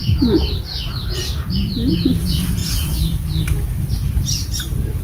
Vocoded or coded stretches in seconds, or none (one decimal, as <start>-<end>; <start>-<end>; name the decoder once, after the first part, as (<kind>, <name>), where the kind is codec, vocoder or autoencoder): 0.0-1.9 (vocoder, BigVGAN v2); 2.6-5.0